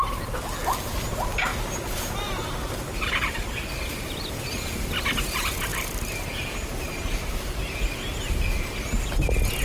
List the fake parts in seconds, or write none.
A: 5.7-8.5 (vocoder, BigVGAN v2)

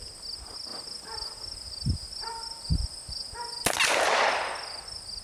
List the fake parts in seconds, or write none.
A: none

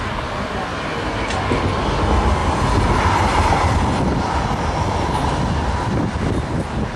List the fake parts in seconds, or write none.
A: 2.4-3.7 (vocoder, BigVGAN v2)

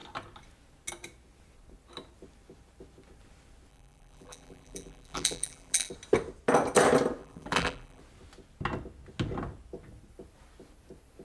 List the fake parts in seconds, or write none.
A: 3.7-5.9 (vocoder, BigVGAN v2); 7.2-8.0